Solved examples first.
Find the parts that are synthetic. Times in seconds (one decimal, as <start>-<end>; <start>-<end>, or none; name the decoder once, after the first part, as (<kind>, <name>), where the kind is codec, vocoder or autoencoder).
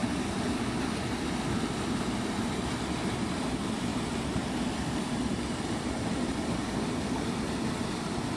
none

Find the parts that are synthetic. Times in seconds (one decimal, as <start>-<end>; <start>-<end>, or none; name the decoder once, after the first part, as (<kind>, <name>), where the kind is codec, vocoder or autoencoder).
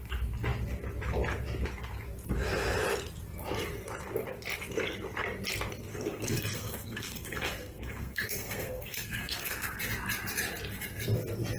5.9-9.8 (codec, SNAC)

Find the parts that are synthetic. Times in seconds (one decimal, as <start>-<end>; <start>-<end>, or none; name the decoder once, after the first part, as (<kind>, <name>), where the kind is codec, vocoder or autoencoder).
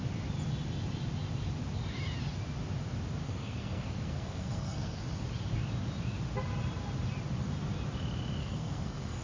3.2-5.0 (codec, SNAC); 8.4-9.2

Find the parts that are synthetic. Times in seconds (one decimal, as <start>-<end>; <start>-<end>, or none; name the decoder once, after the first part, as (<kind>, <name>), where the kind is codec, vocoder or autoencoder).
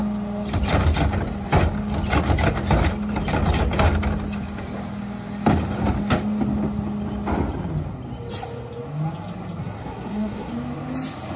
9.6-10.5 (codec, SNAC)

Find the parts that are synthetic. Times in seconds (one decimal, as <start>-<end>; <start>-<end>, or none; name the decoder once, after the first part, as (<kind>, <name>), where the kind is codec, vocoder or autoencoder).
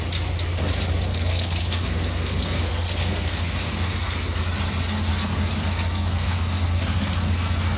1.1-4.4 (codec, SNAC); 5.1-7.8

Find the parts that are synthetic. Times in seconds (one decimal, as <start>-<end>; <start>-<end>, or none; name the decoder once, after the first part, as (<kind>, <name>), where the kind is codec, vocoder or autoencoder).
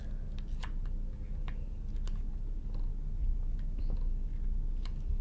none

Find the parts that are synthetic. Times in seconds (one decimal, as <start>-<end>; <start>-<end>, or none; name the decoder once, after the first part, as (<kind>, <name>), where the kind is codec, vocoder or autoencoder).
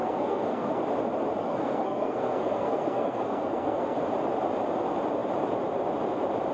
0.0-0.8 (codec, SNAC); 1.4-4.0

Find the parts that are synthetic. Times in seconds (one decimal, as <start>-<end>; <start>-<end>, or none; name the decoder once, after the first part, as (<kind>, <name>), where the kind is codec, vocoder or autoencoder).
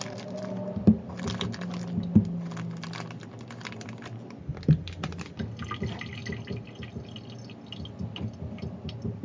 none